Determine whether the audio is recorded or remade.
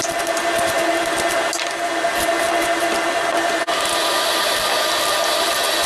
recorded